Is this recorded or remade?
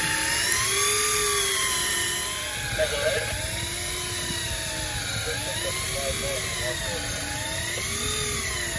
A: recorded